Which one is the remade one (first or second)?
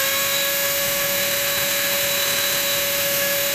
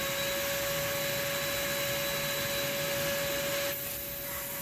first